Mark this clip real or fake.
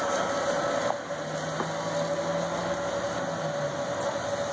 real